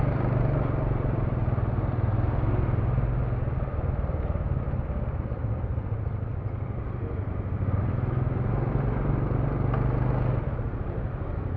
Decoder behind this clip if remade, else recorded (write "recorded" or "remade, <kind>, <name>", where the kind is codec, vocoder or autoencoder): recorded